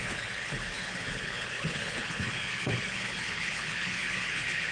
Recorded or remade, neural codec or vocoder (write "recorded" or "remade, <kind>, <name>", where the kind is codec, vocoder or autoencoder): remade, codec, HILCodec